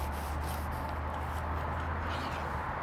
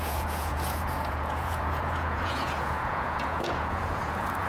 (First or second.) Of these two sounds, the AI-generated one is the second